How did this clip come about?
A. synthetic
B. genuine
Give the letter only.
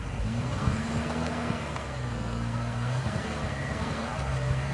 A